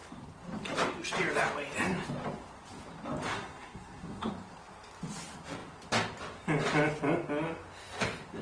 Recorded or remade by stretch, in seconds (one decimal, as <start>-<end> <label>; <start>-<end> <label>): 0.0-3.3 recorded; 3.3-4.3 remade; 4.3-8.4 recorded